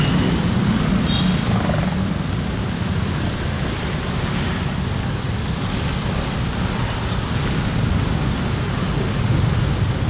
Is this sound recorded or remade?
recorded